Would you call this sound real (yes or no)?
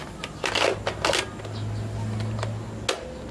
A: yes